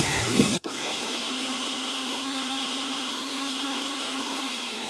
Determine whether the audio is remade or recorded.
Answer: remade